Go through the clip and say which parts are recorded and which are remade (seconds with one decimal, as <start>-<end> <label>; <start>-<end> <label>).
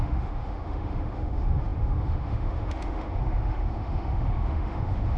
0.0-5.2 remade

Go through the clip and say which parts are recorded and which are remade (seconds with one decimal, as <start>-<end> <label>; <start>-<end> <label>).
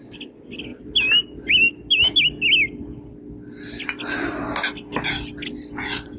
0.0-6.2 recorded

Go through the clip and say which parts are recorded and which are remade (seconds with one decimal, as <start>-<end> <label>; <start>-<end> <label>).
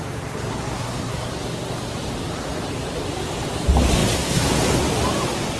0.0-0.5 recorded; 0.5-1.3 remade; 1.3-5.6 recorded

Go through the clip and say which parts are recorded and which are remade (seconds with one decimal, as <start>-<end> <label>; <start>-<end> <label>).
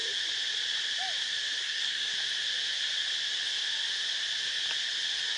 0.0-1.6 recorded; 1.6-2.1 remade; 2.1-5.4 recorded